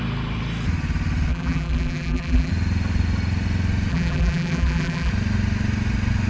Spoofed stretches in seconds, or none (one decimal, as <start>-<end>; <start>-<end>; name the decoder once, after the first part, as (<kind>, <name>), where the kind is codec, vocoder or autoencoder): 1.3-2.5 (vocoder, BigVGAN v2); 3.9-5.1